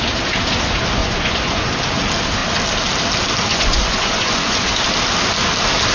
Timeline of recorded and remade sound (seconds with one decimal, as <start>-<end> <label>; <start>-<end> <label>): 0.0-1.0 recorded; 1.0-1.7 remade; 1.7-3.5 recorded; 3.5-4.8 remade; 4.8-5.9 recorded

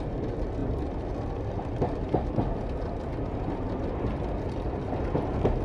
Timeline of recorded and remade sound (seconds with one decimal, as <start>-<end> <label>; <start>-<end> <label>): 0.0-5.6 recorded

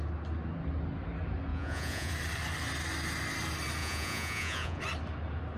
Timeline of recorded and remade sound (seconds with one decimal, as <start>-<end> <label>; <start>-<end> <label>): 0.0-1.5 recorded; 1.5-2.1 remade; 2.1-3.8 recorded; 3.8-4.8 remade; 4.8-5.6 recorded

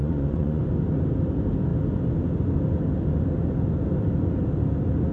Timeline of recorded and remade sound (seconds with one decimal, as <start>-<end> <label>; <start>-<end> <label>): 0.0-0.6 remade; 0.6-5.1 recorded

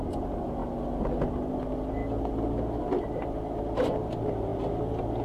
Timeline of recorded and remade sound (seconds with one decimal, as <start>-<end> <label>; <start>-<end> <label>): 0.0-5.2 recorded

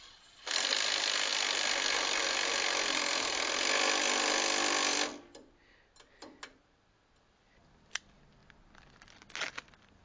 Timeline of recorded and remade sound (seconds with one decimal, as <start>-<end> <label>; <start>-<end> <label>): 0.0-10.0 recorded